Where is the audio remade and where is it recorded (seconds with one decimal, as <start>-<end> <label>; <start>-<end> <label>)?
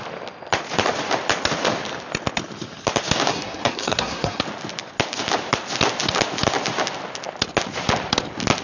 0.0-3.3 recorded; 3.3-4.4 remade; 4.4-8.6 recorded